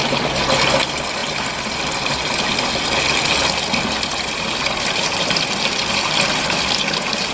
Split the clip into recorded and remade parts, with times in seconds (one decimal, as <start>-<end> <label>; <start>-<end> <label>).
0.0-7.3 recorded